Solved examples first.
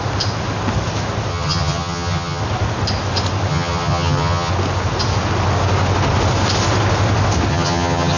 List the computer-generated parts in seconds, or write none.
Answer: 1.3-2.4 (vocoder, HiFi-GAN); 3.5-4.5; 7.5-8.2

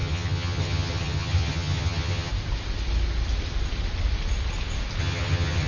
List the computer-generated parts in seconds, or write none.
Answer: 0.0-2.3 (vocoder, HiFi-GAN); 5.0-5.7

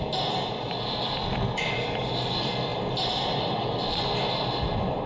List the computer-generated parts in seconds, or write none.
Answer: none

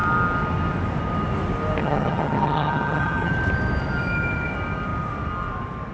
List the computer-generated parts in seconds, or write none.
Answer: 1.8-3.3 (vocoder, HiFi-GAN)